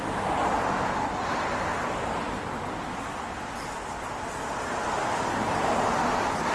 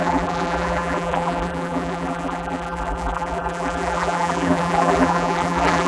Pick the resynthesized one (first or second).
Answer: second